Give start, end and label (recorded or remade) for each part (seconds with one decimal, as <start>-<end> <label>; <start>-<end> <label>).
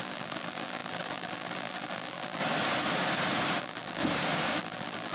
0.0-2.4 remade; 2.4-3.6 recorded; 3.6-4.0 remade; 4.0-4.6 recorded; 4.6-5.1 remade